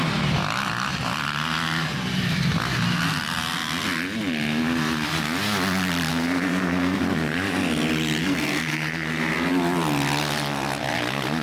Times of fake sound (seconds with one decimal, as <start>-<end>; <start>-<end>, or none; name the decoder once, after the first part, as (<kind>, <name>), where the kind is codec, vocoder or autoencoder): 6.1-7.0 (codec, SNAC); 8.2-9.3